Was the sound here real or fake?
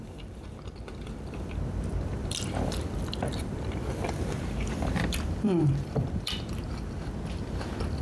fake